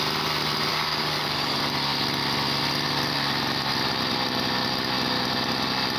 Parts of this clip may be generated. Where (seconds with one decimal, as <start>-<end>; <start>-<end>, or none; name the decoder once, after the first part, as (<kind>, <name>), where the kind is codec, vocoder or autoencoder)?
0.7-1.6 (codec, DAC)